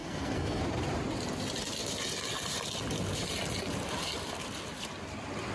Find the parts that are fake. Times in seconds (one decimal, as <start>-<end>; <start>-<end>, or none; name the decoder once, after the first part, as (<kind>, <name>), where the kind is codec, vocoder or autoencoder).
0.0-0.6 (codec, SNAC)

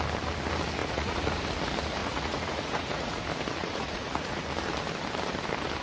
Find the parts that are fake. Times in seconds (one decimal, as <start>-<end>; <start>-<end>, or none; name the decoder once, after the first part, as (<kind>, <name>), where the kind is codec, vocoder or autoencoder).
0.8-1.4 (vocoder, Vocos); 2.0-3.2; 3.6-4.4

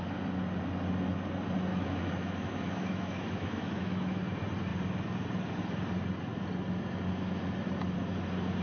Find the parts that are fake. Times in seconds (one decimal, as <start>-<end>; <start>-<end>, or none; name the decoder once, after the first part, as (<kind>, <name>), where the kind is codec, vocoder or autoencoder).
1.7-4.2 (autoencoder, DAC-VAE)

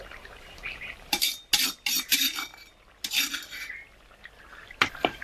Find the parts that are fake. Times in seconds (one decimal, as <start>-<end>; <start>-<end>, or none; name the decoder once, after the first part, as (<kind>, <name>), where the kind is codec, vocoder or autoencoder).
0.0-1.4 (vocoder, BigVGAN v2); 2.0-2.5; 4.4-5.2

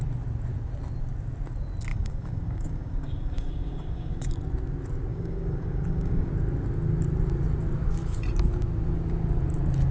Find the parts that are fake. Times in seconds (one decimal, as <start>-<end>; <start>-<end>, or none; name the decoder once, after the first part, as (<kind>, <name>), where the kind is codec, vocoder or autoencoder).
1.9-4.3 (codec, DAC); 5.1-6.3

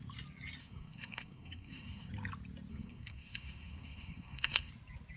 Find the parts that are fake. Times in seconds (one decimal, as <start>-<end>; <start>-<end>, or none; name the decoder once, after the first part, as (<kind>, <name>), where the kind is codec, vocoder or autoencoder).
0.6-2.1 (codec, SNAC); 2.7-4.7

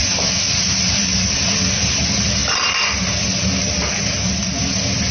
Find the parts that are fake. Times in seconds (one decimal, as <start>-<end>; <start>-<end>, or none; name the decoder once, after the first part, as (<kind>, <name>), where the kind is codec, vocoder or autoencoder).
none

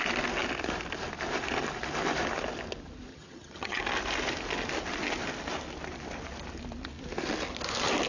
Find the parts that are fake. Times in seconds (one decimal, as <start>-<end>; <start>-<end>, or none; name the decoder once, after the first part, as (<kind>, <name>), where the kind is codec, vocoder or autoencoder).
3.1-3.8 (vocoder, HiFi-GAN)